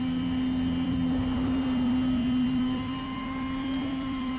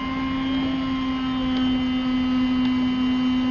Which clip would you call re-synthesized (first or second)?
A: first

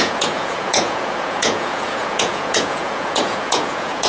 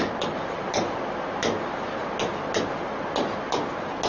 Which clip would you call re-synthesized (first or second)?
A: first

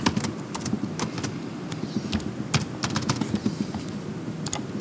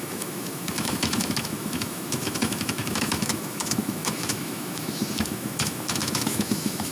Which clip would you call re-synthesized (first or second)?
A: second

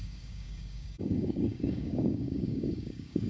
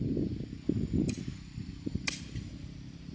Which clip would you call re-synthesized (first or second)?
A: first